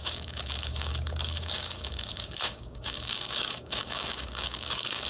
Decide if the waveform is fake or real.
fake